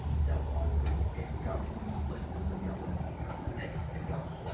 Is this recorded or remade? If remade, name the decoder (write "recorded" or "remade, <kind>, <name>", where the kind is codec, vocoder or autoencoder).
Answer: recorded